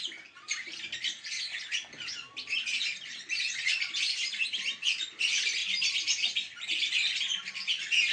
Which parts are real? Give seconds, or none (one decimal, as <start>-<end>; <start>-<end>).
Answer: 0.0-8.1